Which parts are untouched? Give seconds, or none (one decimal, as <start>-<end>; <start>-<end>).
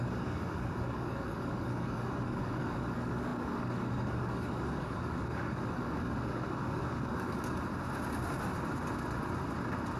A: 7.7-10.0